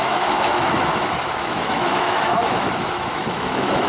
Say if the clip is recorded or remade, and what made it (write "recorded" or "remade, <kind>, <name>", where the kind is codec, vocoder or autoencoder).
remade, autoencoder, DAC-VAE